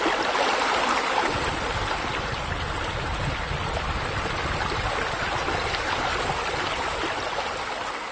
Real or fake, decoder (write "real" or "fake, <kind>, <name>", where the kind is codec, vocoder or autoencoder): real